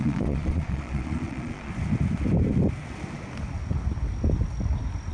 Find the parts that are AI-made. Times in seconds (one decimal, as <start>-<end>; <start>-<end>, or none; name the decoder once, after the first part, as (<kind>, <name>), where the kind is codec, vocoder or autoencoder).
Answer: 0.0-1.7 (vocoder, Vocos)